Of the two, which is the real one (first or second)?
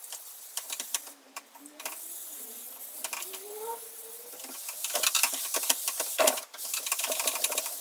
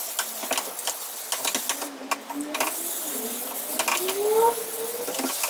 second